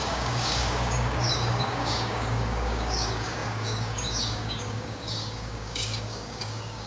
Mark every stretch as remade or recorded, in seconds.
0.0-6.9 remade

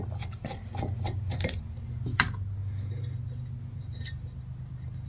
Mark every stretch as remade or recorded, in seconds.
0.0-5.1 recorded

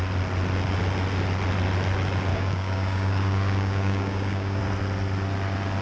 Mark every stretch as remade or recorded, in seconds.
0.0-2.3 recorded; 2.3-4.6 remade; 4.6-5.8 recorded

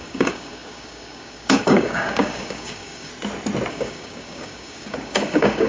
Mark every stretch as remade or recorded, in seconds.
0.0-3.1 remade; 3.1-3.7 recorded; 3.7-5.7 remade

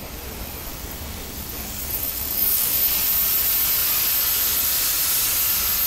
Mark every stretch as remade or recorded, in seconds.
0.0-0.7 recorded; 0.7-2.9 remade; 2.9-5.9 recorded

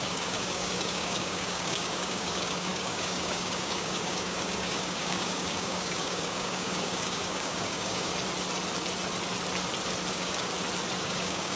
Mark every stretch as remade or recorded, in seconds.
0.0-8.1 remade; 8.1-10.1 recorded; 10.1-10.5 remade; 10.5-11.0 recorded; 11.0-11.6 remade

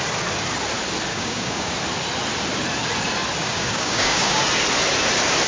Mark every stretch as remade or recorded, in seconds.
0.0-1.1 recorded; 1.1-1.7 remade; 1.7-3.4 recorded; 3.4-4.4 remade; 4.4-5.5 recorded